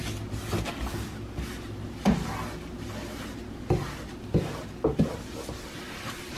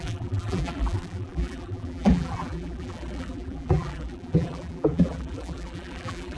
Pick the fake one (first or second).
second